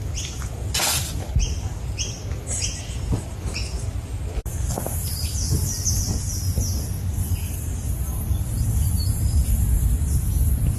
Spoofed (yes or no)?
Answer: no